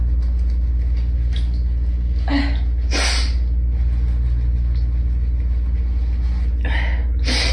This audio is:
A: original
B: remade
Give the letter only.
A